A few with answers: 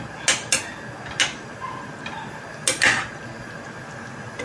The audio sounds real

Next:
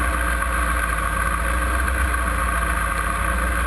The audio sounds real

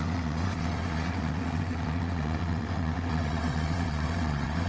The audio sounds fake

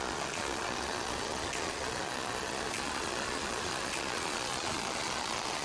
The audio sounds fake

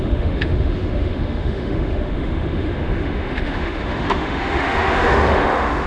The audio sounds fake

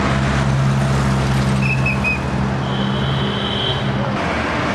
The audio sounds real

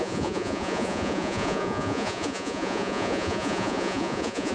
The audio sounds fake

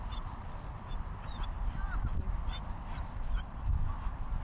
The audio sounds real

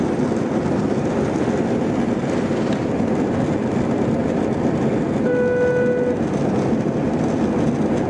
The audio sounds real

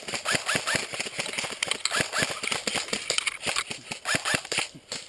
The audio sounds real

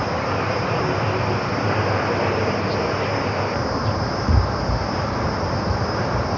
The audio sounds real